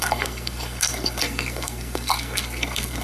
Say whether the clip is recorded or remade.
remade